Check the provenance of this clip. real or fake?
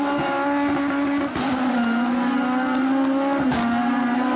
real